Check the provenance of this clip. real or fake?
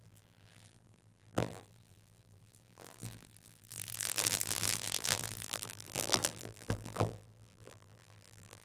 fake